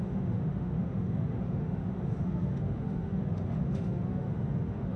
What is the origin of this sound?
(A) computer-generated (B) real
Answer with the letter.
A